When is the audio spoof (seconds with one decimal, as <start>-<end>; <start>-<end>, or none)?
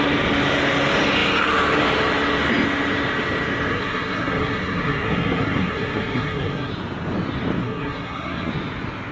3.7-6.7; 7.6-8.5